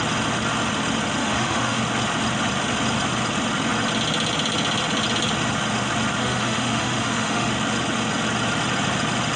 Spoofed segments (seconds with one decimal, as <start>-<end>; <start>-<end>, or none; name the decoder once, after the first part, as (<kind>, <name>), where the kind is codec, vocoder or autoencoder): 1.2-1.8 (autoencoder, DAC-VAE); 6.2-7.5